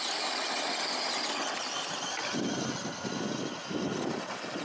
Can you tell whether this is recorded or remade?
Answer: recorded